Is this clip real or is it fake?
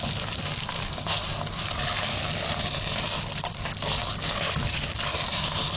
real